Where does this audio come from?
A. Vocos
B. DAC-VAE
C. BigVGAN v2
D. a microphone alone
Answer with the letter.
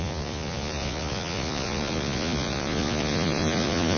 A